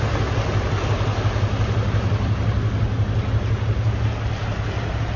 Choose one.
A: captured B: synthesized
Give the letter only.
A